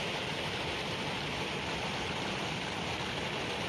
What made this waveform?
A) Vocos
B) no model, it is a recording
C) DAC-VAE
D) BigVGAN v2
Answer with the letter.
B